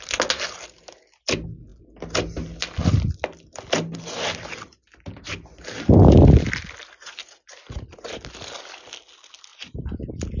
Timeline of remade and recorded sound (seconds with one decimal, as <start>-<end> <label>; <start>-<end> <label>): 0.0-10.4 recorded